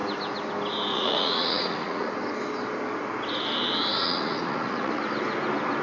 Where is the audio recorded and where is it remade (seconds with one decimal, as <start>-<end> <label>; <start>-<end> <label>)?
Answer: 0.0-0.9 recorded; 0.9-2.1 remade; 2.1-3.9 recorded; 3.9-5.0 remade; 5.0-5.8 recorded